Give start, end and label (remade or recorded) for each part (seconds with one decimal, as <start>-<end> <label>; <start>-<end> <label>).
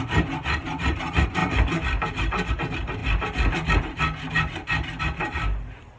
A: 0.0-6.0 recorded